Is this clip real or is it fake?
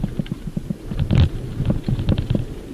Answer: real